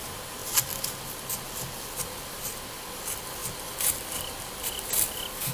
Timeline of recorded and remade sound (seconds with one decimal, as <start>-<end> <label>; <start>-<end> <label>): 0.0-5.5 recorded